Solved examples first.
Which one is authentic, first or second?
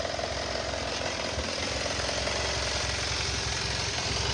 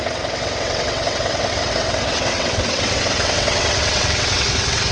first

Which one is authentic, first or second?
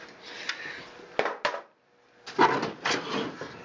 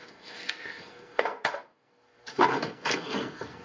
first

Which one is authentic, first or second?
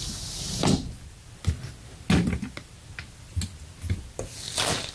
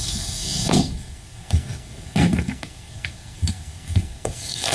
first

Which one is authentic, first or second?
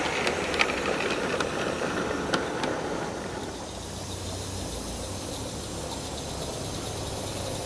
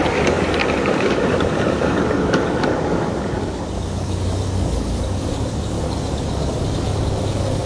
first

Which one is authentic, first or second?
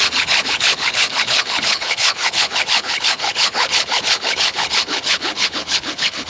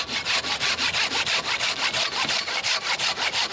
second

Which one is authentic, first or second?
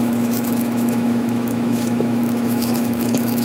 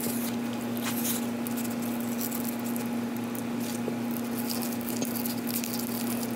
second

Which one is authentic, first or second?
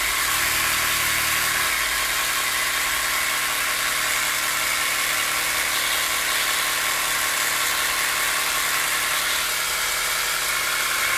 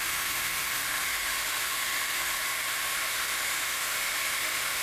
first